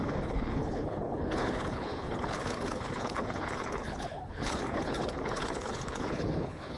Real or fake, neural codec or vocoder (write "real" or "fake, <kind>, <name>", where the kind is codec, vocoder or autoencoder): fake, codec, HILCodec